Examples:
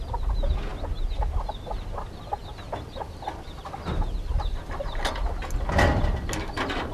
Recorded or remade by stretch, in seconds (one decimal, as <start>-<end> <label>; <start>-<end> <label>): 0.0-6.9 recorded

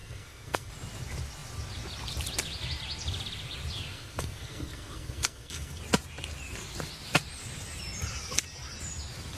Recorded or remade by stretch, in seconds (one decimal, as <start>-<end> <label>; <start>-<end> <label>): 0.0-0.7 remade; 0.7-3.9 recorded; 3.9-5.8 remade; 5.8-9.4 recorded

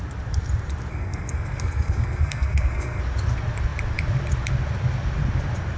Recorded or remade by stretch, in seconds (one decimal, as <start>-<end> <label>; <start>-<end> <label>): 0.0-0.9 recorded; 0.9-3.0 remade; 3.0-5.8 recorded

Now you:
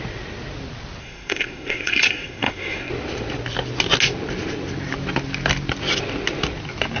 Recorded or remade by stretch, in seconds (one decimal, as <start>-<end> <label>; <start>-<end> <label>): 0.0-1.0 recorded; 1.0-2.9 remade; 2.9-7.0 recorded

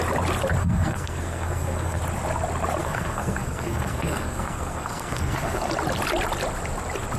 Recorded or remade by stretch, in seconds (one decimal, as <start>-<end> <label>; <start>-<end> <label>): 0.0-0.6 recorded; 0.6-2.0 remade; 2.0-2.8 recorded; 2.8-5.7 remade; 5.7-7.2 recorded

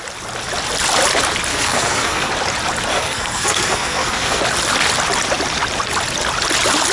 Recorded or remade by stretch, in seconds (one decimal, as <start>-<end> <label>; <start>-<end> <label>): 0.0-1.5 recorded; 1.5-2.3 remade; 2.3-2.9 recorded; 2.9-4.4 remade; 4.4-6.9 recorded

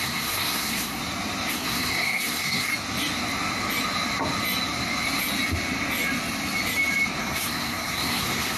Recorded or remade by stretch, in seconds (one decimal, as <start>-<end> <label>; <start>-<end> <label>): 0.0-1.0 remade; 1.0-1.5 recorded; 1.5-2.7 remade; 2.7-7.2 recorded; 7.2-8.6 remade

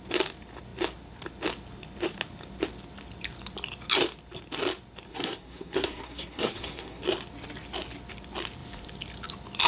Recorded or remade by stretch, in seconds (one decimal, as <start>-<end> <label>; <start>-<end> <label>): 0.0-5.1 recorded; 5.1-7.0 remade; 7.0-9.7 recorded